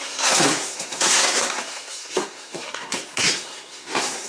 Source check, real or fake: fake